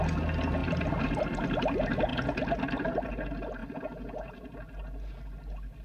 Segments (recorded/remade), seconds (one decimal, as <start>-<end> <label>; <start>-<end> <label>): 0.0-0.6 recorded; 0.6-1.2 remade; 1.2-5.8 recorded